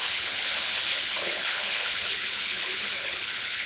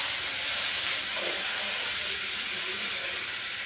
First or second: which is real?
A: second